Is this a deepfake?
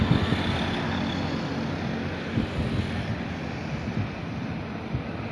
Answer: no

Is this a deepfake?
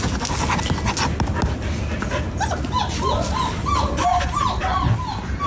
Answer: no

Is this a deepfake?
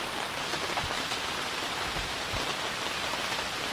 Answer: no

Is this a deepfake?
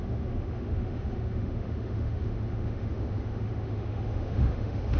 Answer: yes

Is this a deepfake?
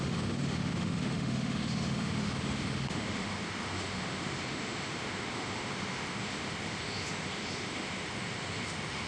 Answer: yes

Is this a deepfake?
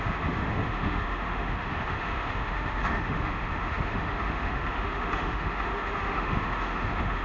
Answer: yes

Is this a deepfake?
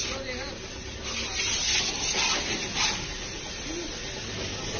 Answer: no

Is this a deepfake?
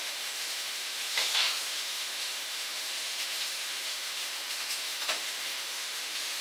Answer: yes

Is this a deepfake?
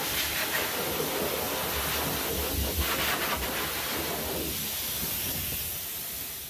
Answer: no